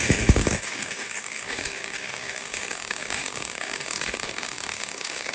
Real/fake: fake